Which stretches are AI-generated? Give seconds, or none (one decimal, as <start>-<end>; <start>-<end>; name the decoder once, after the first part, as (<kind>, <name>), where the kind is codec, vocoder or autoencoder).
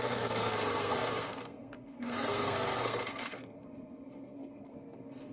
0.0-5.3 (codec, SNAC)